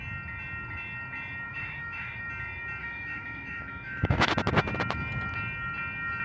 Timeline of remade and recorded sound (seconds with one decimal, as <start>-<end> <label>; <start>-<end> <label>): 0.0-1.5 recorded; 1.5-2.2 remade; 2.2-2.8 recorded; 2.8-4.3 remade; 4.3-6.2 recorded